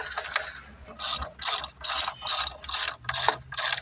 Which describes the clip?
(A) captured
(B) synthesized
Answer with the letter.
A